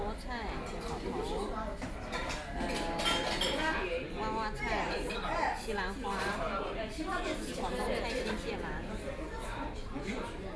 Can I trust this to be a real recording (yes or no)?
yes